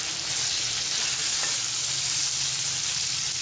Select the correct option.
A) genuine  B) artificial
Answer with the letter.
A